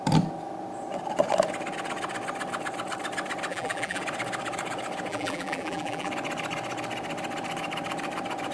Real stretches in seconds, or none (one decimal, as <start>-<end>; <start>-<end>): 0.0-3.5; 4.0-5.1; 6.1-8.5

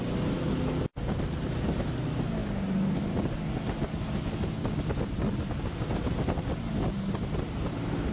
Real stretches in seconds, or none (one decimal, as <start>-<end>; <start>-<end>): 0.0-8.1